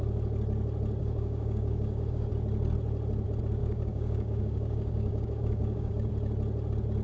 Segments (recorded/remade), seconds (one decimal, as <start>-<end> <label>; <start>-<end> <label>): 0.0-1.0 recorded; 1.0-2.3 remade; 2.3-3.6 recorded; 3.6-6.1 remade; 6.1-7.0 recorded